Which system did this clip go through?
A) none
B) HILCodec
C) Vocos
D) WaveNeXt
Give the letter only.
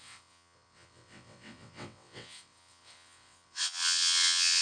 D